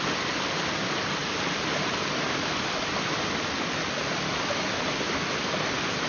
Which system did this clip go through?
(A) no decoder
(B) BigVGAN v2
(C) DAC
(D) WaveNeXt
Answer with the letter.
A